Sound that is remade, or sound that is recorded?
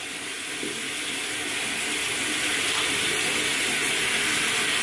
recorded